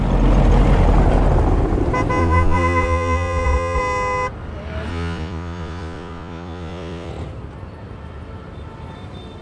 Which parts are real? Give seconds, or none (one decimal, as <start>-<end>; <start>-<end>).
0.0-2.2; 3.8-4.9; 7.1-9.4